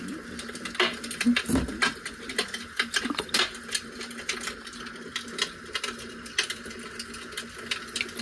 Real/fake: real